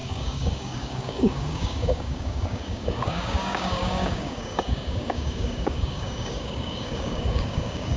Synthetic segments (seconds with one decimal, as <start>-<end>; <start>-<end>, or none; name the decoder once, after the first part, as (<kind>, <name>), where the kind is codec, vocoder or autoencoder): 0.0-8.0 (codec, DAC)